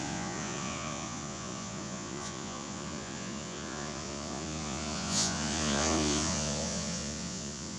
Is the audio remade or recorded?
remade